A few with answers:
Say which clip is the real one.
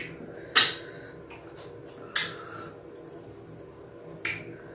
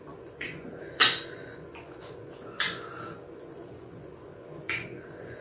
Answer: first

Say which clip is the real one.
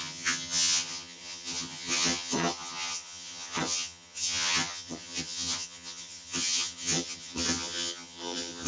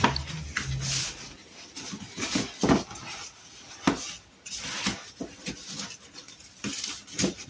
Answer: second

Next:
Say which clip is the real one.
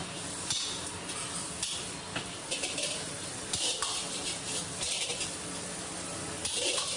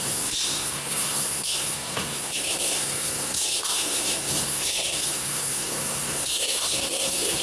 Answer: first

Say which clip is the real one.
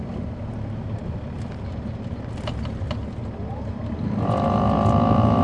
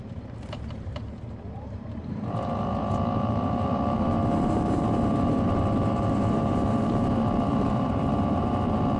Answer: first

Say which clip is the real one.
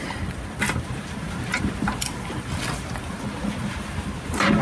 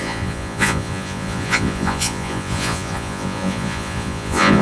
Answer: first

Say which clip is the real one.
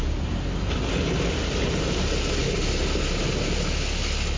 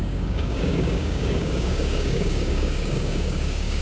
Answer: first